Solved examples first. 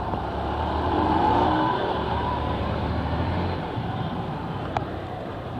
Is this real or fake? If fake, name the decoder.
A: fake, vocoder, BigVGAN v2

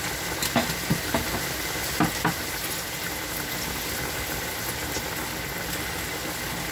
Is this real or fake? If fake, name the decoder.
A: real